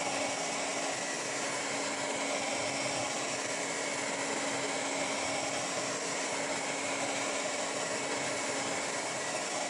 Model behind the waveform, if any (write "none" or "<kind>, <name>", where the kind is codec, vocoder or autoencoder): none